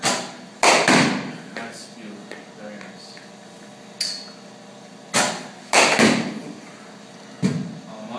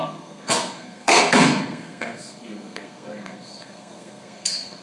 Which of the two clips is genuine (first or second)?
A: first